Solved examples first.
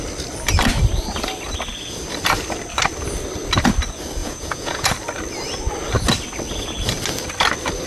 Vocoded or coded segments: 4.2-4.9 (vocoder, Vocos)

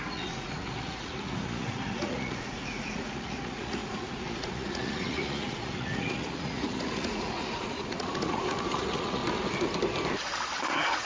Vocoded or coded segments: 0.0-9.2 (vocoder, Vocos)

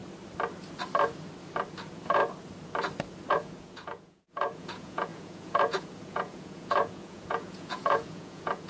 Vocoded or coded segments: 1.8-2.2 (vocoder, Vocos); 3.3-8.7